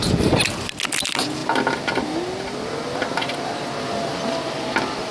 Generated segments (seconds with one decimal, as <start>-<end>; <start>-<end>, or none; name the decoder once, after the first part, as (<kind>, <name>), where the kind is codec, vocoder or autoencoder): none